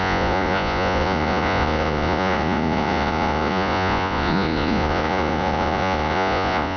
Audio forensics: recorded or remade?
remade